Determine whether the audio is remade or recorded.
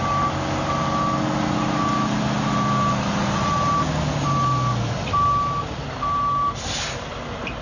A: recorded